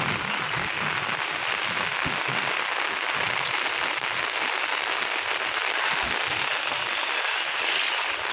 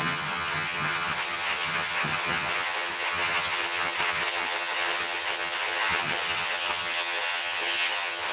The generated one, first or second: second